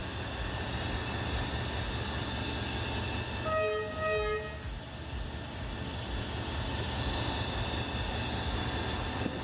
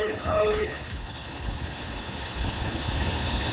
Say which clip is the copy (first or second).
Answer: second